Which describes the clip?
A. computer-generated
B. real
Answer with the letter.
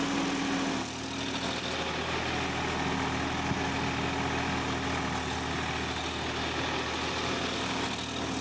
B